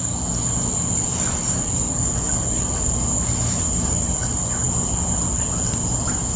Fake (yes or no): no